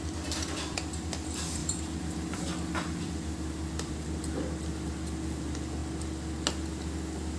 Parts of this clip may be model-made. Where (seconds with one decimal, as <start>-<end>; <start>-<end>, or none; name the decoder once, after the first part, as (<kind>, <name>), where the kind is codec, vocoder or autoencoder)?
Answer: 0.0-5.8 (vocoder, BigVGAN v2); 6.5-7.4